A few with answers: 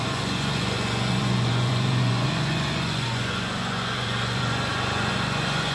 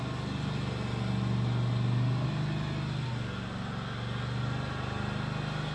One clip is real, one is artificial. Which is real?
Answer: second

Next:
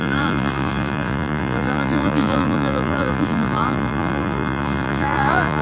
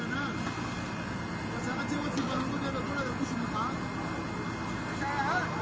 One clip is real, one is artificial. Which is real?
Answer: second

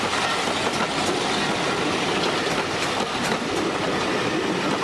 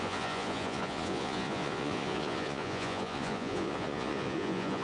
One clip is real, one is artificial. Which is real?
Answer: first